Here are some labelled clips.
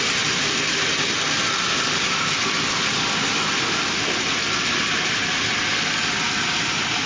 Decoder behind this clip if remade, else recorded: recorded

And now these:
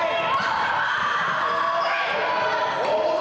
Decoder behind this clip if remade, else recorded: recorded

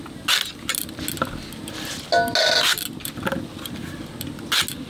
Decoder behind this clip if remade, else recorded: recorded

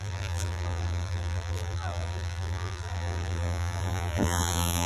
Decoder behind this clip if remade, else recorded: remade, vocoder, BigVGAN v2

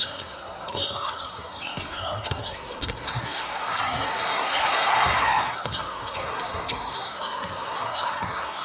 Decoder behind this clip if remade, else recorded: remade, codec, SNAC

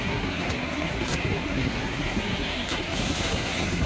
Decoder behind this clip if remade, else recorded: remade, codec, SNAC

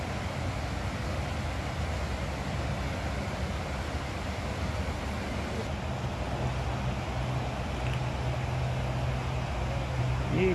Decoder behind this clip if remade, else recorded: recorded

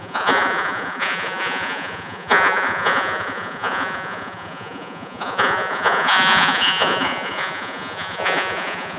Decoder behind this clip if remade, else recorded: remade, vocoder, Vocos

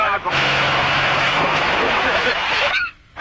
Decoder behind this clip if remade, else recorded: remade, autoencoder, DAC-VAE